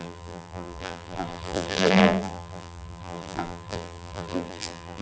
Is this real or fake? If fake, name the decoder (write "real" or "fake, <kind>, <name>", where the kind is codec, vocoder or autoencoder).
fake, vocoder, BigVGAN v2